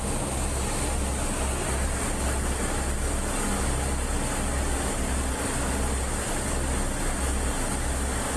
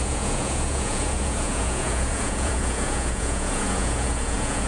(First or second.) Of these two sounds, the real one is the first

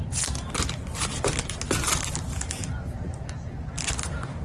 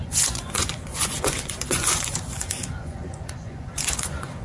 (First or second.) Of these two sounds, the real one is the first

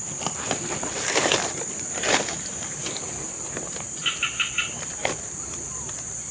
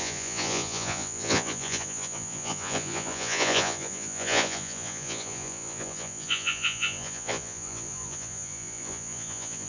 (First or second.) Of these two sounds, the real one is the first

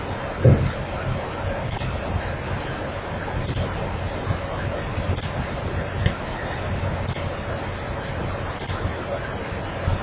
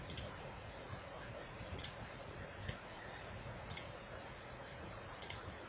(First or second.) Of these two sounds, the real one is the first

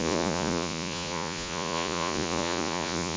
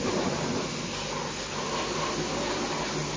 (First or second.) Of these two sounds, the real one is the second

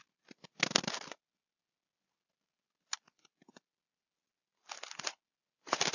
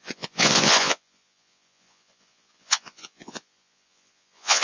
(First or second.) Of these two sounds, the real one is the first